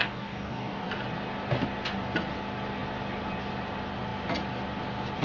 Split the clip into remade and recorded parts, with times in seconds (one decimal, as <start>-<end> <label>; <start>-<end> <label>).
0.0-0.9 remade; 0.9-5.2 recorded